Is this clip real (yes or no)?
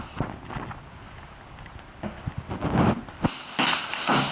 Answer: yes